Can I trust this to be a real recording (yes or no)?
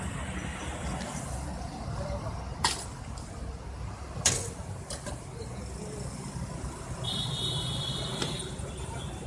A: yes